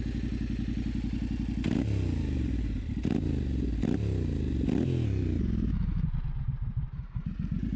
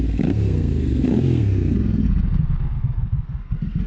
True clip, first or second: first